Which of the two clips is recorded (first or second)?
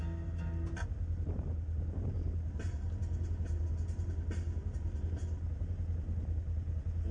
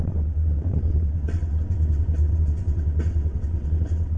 first